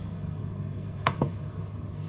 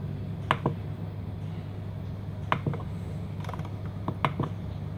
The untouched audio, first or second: second